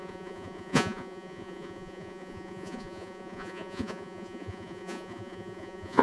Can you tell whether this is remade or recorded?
remade